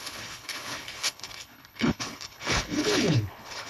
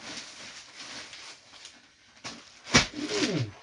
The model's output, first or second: first